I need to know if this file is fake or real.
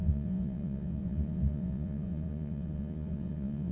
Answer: fake